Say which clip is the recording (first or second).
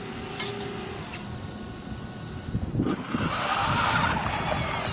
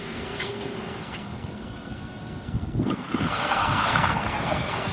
first